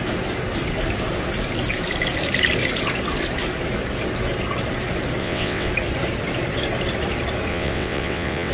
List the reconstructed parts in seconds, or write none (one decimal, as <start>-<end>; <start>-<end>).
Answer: 5.2-5.7; 7.5-8.5